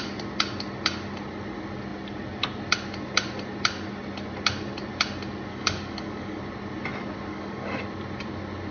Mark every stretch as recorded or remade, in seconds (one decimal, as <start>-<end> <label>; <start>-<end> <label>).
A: 0.0-5.5 recorded; 5.5-6.4 remade; 6.4-7.3 recorded; 7.3-7.8 remade; 7.8-8.7 recorded